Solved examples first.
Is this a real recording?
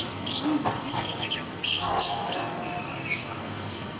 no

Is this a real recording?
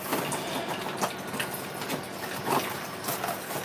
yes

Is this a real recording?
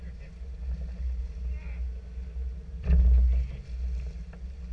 yes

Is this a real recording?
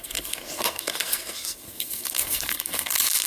no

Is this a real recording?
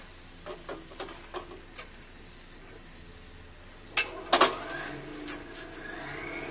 yes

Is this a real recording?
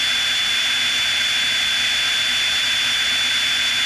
yes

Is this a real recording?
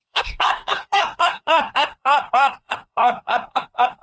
no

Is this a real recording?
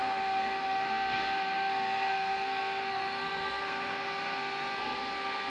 no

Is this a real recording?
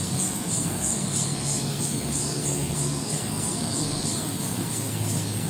no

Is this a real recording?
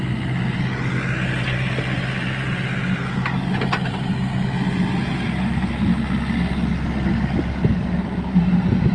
yes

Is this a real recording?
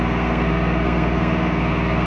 no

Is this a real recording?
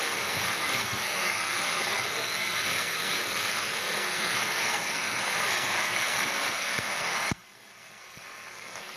no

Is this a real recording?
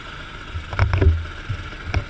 yes